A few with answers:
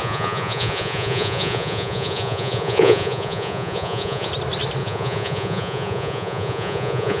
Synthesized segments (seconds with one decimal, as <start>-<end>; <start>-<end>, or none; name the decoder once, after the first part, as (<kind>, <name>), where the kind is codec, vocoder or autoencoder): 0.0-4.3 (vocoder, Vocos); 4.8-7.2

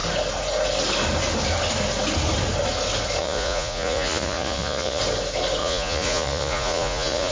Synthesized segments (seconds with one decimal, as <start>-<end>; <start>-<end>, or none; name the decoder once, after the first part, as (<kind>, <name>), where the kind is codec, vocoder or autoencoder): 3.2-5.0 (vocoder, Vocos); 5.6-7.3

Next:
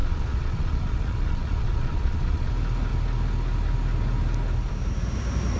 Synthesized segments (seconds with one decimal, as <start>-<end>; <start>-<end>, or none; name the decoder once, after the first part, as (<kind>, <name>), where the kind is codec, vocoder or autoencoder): 0.0-2.5 (vocoder, Vocos)

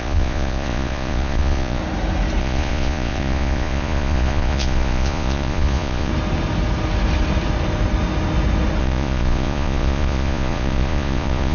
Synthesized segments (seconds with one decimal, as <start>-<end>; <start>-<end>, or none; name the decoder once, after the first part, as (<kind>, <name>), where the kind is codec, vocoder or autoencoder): 0.0-1.8 (vocoder, Vocos); 2.4-6.1; 8.8-11.5

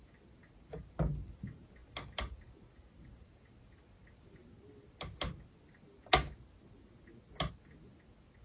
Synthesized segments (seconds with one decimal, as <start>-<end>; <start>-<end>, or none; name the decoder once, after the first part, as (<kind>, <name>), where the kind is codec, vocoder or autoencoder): none